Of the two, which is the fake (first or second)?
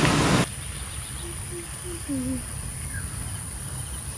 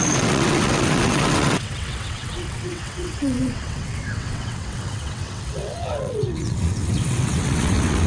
second